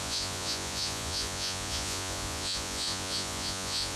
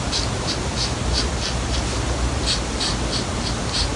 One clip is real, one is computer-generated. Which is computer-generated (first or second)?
first